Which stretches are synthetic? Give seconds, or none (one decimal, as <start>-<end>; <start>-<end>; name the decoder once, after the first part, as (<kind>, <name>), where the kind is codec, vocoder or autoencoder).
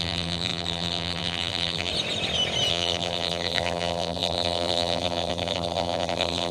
0.0-1.9 (vocoder, BigVGAN v2); 2.7-6.5